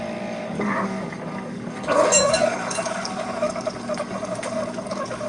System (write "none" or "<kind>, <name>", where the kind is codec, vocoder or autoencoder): codec, DAC